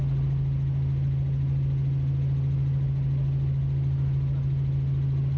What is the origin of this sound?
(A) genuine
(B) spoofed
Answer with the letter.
A